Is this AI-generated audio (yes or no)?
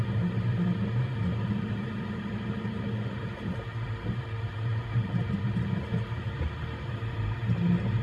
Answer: no